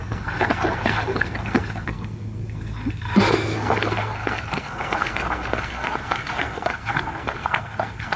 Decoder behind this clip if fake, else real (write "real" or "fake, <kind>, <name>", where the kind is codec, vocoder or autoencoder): fake, codec, SNAC